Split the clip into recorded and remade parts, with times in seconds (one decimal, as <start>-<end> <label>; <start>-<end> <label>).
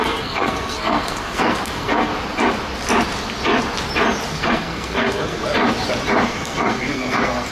0.0-2.1 remade; 2.1-4.3 recorded; 4.3-5.4 remade; 5.4-6.3 recorded; 6.3-7.5 remade